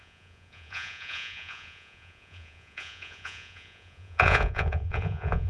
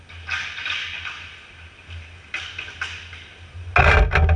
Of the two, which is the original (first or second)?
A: second